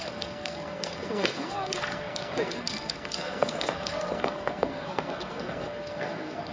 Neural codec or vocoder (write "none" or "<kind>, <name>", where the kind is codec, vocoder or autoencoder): codec, SNAC